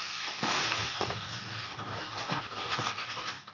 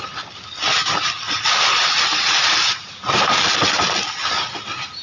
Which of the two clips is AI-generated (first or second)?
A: first